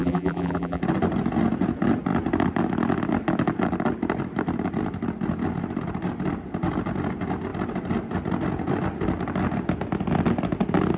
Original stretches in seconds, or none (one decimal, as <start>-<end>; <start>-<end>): 0.8-11.0